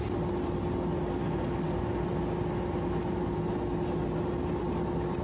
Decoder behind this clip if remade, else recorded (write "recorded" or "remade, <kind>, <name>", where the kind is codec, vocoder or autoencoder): recorded